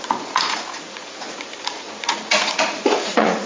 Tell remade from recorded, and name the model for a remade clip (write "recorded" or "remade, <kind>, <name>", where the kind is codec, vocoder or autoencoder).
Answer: remade, vocoder, Vocos